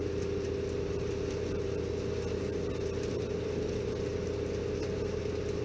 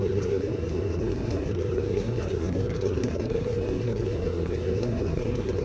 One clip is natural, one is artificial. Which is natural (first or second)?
first